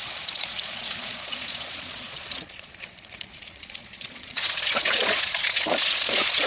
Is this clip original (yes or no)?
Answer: no